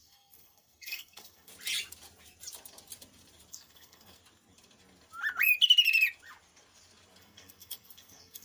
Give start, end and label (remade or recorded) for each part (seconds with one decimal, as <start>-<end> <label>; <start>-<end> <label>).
0.0-1.5 remade; 1.5-3.5 recorded; 3.5-4.2 remade; 4.2-7.2 recorded; 7.2-8.4 remade